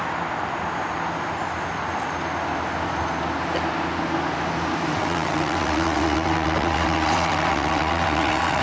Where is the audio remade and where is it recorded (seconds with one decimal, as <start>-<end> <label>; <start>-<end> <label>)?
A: 0.0-4.9 recorded; 4.9-8.6 remade